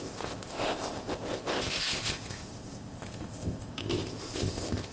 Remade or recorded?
remade